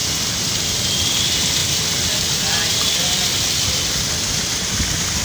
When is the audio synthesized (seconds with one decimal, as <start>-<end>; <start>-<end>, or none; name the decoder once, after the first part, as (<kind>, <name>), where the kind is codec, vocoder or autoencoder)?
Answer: 0.6-5.2 (vocoder, BigVGAN v2)